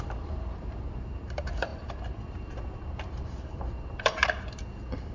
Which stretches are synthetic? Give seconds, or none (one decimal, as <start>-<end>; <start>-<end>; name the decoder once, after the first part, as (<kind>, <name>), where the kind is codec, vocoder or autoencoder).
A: 0.0-5.1 (vocoder, BigVGAN v2)